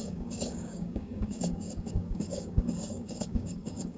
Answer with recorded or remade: remade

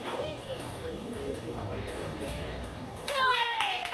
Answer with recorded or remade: remade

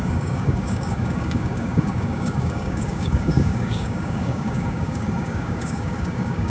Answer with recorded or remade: remade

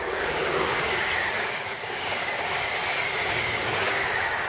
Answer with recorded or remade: remade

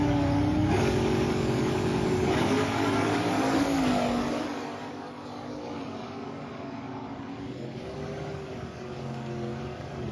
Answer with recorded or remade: remade